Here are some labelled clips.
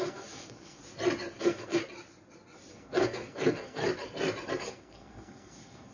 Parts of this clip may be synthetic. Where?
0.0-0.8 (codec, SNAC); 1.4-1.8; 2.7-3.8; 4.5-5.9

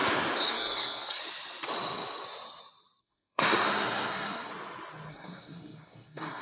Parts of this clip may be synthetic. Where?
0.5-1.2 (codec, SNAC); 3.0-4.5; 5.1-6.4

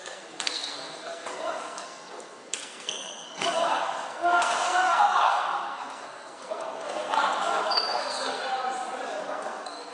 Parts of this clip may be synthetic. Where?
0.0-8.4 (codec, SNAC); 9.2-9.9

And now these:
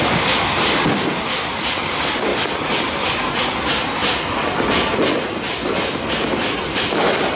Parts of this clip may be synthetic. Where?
none

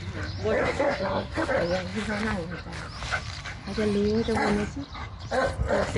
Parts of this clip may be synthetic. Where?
0.6-1.5 (codec, SNAC)

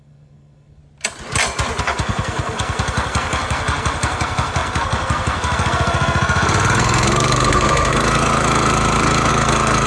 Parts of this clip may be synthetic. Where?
0.0-0.8 (codec, SNAC); 1.8-9.9